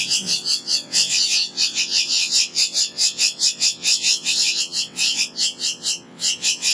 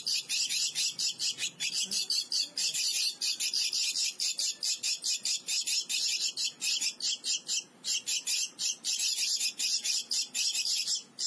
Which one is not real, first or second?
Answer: first